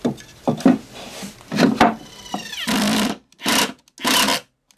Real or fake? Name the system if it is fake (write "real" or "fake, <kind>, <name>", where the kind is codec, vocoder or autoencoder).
real